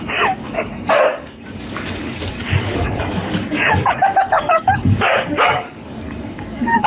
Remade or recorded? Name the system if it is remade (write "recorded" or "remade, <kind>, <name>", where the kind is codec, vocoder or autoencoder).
remade, codec, DAC